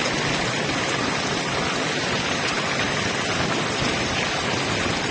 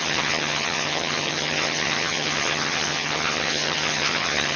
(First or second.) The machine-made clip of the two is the second